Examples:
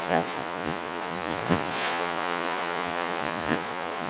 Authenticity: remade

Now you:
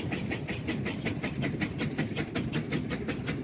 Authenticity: recorded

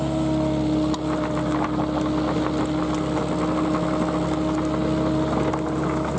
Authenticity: recorded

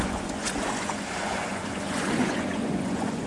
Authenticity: remade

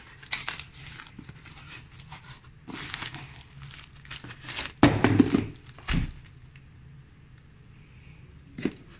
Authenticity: recorded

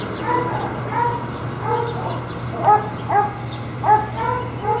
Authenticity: recorded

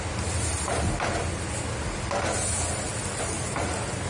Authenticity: recorded